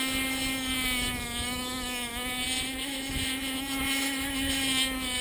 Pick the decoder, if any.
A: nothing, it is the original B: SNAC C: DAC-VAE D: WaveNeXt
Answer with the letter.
C